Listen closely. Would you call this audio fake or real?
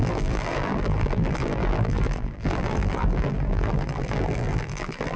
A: fake